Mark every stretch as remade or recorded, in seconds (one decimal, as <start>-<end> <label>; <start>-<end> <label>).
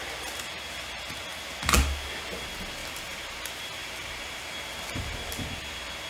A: 0.0-2.8 recorded; 2.8-3.4 remade; 3.4-3.8 recorded; 3.8-5.3 remade; 5.3-6.1 recorded